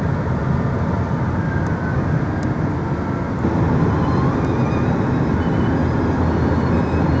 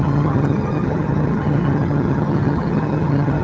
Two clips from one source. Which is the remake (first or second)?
second